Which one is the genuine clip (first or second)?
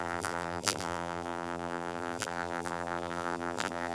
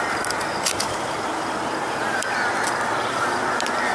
second